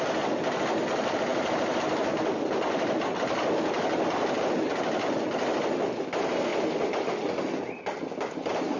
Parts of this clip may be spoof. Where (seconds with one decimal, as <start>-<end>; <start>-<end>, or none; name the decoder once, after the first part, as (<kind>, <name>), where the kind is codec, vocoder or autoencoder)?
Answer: none